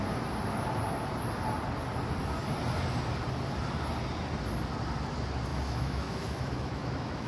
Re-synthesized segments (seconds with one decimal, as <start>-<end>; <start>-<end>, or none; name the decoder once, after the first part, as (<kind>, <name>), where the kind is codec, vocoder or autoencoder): 5.5-7.3 (autoencoder, DAC-VAE)